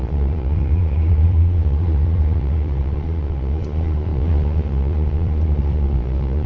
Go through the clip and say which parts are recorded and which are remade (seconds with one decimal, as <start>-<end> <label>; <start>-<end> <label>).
0.0-6.5 remade